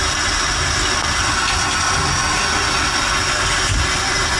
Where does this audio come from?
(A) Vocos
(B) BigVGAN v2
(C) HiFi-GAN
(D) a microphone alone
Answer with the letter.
D